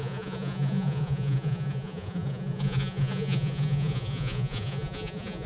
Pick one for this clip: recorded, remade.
remade